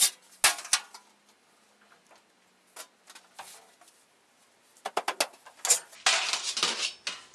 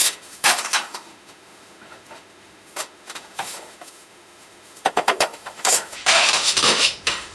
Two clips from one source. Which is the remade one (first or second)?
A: second